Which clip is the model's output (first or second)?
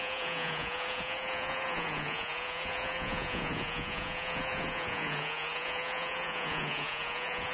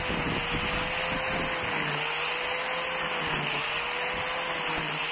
first